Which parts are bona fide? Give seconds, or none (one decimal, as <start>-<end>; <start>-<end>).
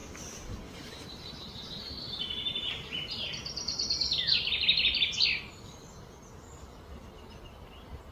0.0-0.7; 3.4-7.5